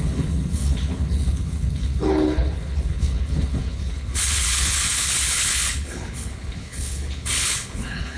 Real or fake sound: fake